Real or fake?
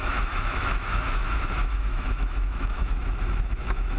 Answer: fake